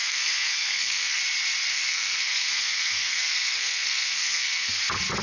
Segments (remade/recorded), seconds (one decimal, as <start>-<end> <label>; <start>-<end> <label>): 0.0-1.2 remade; 1.2-1.7 recorded; 1.7-4.8 remade; 4.8-5.2 recorded